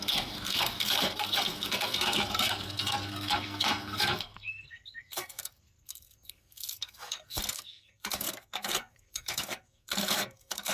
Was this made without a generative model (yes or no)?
no